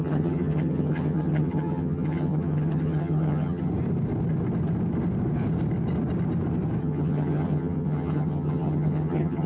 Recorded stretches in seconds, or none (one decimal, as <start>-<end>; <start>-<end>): 3.7-6.8